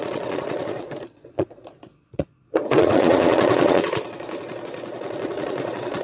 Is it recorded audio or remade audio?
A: remade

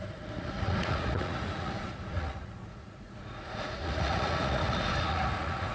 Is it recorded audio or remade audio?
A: remade